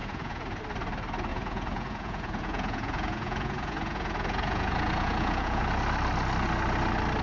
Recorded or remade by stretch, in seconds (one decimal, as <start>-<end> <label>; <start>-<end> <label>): 0.0-0.6 remade; 0.6-1.3 recorded; 1.3-5.6 remade; 5.6-7.2 recorded